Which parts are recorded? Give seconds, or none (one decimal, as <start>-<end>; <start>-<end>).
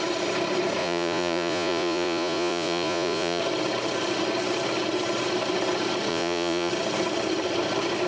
0.0-0.8; 3.4-6.1; 6.7-8.1